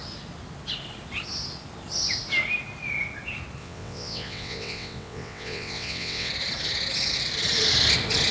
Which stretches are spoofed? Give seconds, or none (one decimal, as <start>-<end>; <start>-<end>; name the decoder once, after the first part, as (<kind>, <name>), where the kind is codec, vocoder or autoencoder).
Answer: 3.6-6.3 (vocoder, WaveNeXt)